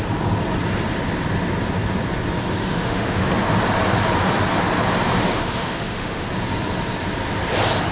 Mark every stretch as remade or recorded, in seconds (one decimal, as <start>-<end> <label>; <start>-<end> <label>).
0.0-2.6 recorded; 2.6-3.3 remade; 3.3-5.3 recorded; 5.3-6.3 remade; 6.3-7.9 recorded